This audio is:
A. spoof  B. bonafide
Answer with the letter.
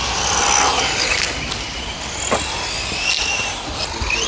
B